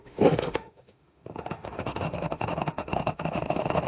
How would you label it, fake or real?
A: fake